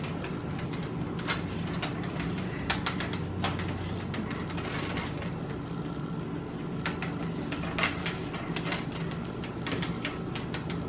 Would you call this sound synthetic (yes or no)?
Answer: no